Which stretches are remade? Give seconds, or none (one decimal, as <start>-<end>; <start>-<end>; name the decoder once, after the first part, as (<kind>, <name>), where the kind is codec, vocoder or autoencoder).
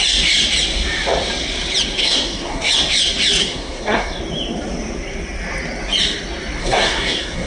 2.0-2.7 (codec, SNAC); 3.4-4.2; 6.6-7.5